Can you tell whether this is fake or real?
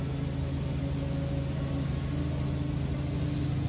real